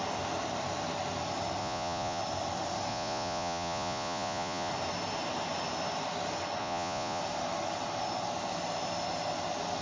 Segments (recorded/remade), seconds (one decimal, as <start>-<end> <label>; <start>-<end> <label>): 0.0-1.6 recorded; 1.6-2.2 remade; 2.2-2.9 recorded; 2.9-4.7 remade; 4.7-6.6 recorded; 6.6-7.2 remade; 7.2-9.8 recorded